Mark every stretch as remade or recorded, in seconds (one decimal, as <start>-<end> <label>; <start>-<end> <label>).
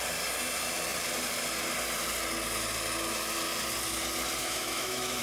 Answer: 0.0-4.4 recorded; 4.4-5.2 remade